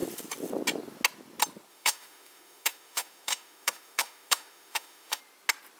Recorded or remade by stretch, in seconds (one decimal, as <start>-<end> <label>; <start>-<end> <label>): 0.0-1.7 recorded; 1.7-5.2 remade; 5.2-5.8 recorded